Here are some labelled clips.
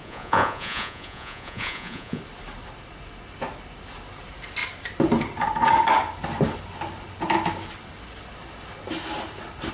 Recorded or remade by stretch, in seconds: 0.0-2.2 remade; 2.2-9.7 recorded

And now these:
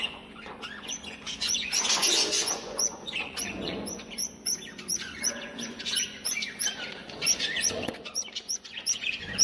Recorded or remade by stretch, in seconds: 0.0-9.4 remade

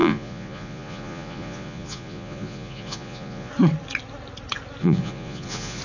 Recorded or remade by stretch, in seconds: 0.0-3.5 remade; 3.5-4.8 recorded; 4.8-5.8 remade

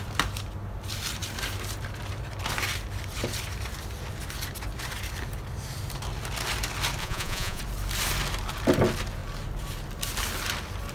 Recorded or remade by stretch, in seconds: 0.0-7.0 recorded; 7.0-7.6 remade; 7.6-10.9 recorded